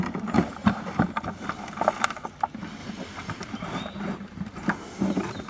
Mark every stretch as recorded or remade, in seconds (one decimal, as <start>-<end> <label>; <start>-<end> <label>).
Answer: 0.0-2.8 recorded; 2.8-4.7 remade; 4.7-5.5 recorded